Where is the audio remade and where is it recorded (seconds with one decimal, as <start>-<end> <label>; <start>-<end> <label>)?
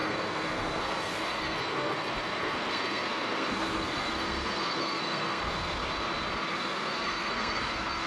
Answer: 0.0-5.8 remade; 5.8-6.5 recorded; 6.5-8.1 remade